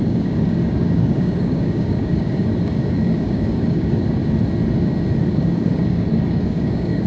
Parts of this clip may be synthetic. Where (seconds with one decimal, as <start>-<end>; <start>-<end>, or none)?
0.0-4.2; 5.2-7.1